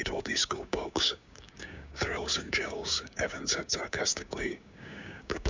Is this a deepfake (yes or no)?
yes